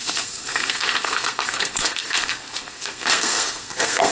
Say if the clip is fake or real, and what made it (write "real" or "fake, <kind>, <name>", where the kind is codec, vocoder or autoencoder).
fake, codec, SNAC